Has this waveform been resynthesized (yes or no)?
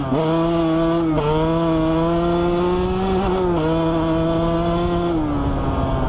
no